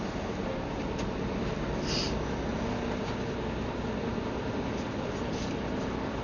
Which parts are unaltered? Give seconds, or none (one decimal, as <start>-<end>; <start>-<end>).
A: 0.0-6.2